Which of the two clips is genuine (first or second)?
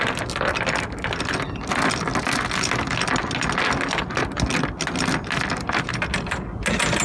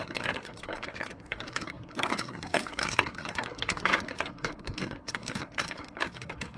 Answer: first